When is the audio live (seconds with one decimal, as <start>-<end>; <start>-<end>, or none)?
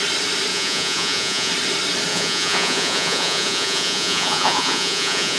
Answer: 0.0-0.5; 1.5-2.1